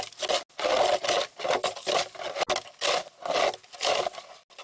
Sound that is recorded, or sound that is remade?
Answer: recorded